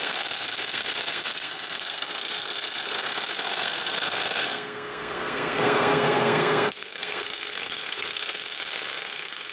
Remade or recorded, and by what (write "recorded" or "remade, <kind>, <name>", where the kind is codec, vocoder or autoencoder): remade, codec, SNAC